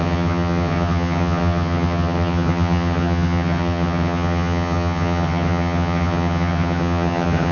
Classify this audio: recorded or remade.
remade